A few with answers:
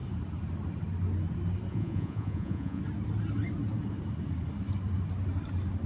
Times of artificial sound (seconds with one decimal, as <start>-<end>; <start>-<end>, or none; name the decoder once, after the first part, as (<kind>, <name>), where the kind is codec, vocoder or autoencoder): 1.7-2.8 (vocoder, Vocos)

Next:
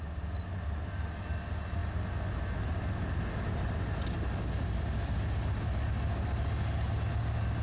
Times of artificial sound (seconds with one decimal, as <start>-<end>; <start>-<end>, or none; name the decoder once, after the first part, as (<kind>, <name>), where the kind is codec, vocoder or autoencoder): none

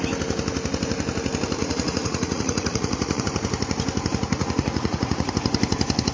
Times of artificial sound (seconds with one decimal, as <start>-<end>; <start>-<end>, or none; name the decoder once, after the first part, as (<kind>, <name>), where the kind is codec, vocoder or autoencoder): 1.6-3.2 (vocoder, Vocos); 4.3-5.3

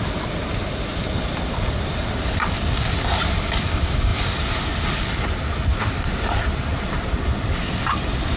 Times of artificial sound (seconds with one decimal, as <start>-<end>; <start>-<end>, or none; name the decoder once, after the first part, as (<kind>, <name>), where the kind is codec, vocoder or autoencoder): 0.0-4.1 (vocoder, BigVGAN v2); 5.0-8.4

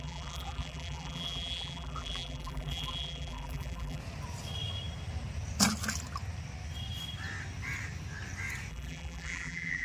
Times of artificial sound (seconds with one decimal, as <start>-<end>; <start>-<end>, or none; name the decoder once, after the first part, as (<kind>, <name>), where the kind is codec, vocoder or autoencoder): 0.0-4.0 (vocoder, BigVGAN v2); 8.7-9.8

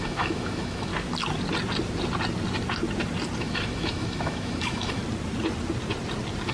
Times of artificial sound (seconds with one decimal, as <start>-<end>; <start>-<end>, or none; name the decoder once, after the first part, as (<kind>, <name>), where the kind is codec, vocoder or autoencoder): 0.0-0.9 (autoencoder, DAC-VAE); 3.4-5.0

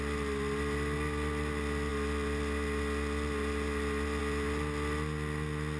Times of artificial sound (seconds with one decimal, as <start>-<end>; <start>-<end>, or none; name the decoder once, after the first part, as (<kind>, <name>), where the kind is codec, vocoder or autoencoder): none

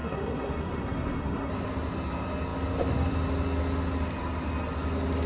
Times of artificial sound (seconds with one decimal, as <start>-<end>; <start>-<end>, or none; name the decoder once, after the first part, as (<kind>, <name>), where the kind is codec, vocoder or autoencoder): 0.0-1.5 (codec, SNAC)